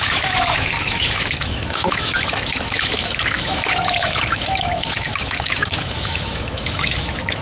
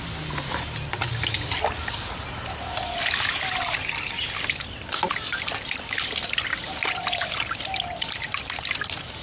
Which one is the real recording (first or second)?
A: second